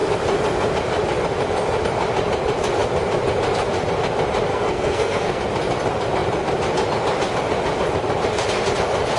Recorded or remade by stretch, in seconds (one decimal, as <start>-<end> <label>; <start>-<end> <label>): 0.0-4.5 recorded; 4.5-5.4 remade; 5.4-9.2 recorded